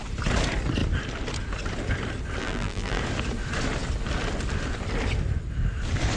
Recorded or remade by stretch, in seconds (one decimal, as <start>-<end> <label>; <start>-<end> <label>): 0.0-2.4 recorded; 2.4-3.0 remade; 3.0-6.2 recorded